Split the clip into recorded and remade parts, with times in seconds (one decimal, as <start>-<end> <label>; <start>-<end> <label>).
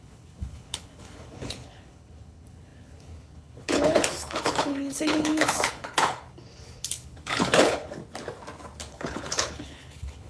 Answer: 0.0-8.0 remade; 8.0-8.9 recorded; 8.9-10.3 remade